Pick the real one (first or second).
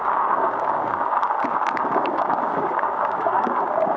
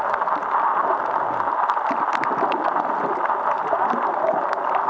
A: second